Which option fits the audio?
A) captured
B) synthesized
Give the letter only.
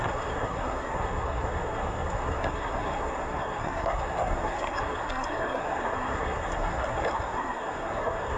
B